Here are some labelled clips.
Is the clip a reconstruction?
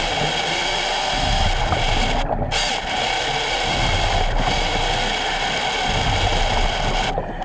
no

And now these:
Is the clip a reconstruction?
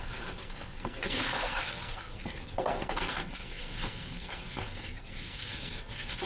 yes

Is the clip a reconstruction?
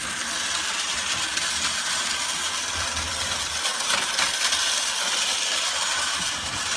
yes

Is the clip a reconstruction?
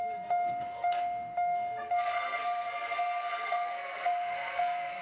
yes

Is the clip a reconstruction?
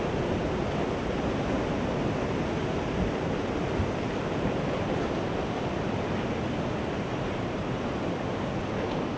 yes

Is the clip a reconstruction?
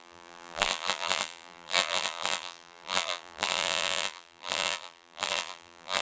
yes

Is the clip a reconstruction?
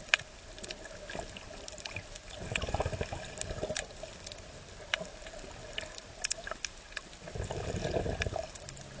no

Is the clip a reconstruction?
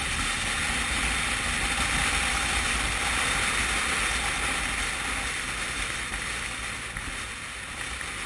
no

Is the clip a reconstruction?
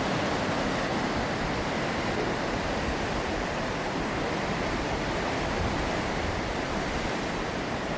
yes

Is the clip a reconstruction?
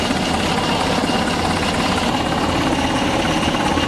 no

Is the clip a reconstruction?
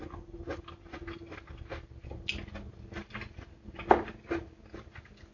no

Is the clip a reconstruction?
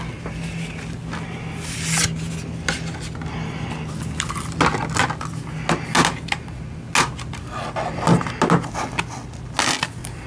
no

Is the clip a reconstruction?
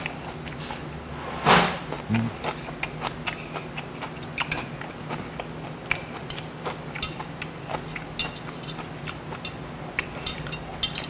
no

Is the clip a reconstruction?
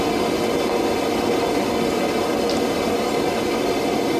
no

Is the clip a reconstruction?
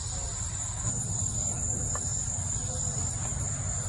no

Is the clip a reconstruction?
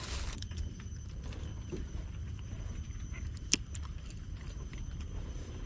yes